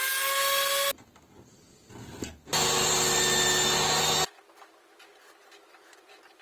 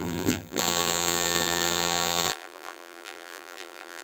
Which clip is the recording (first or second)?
first